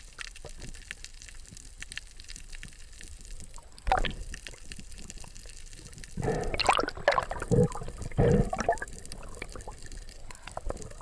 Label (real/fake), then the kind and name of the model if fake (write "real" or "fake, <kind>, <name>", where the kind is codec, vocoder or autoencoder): real